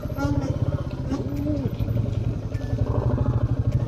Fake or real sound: real